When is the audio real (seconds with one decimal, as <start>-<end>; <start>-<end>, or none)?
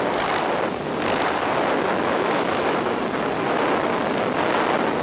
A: 0.0-1.9; 3.0-5.0